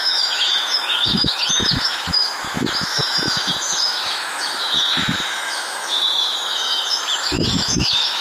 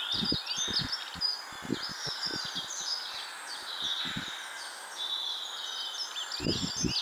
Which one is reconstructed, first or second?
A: first